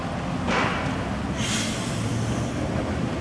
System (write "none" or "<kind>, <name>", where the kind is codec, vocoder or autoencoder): none